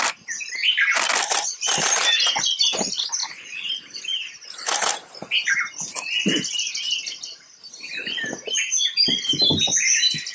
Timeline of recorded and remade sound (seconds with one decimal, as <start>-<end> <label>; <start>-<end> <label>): 0.0-3.2 recorded; 3.2-3.7 remade; 3.7-10.3 recorded